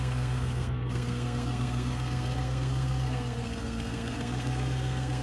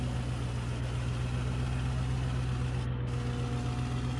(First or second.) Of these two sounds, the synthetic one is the first